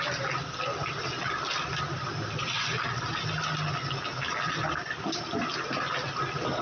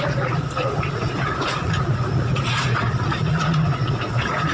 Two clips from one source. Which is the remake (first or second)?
second